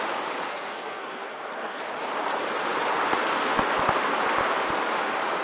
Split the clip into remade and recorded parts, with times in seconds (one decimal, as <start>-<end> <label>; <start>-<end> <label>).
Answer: 0.0-0.5 recorded; 0.5-1.8 remade; 1.8-5.4 recorded